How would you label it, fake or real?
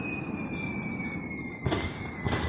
real